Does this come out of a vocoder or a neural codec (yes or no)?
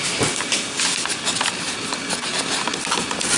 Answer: no